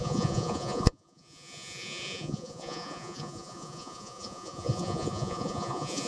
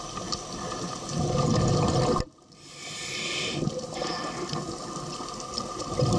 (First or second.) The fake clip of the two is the first